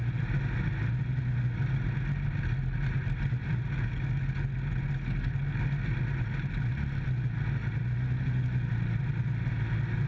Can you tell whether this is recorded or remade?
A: recorded